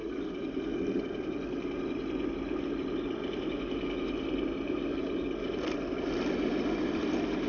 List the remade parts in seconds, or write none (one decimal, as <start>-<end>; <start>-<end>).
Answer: none